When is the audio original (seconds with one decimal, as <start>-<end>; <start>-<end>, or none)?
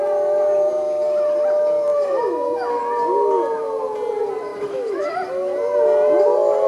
0.0-1.9; 2.8-4.5; 5.1-6.7